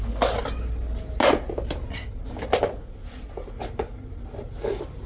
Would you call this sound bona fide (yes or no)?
yes